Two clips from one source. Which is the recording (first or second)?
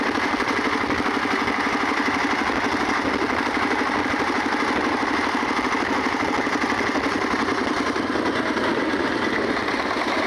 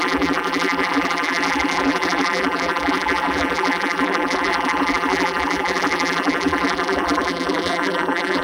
first